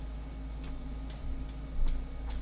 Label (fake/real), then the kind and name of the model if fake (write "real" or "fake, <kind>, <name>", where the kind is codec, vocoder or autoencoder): real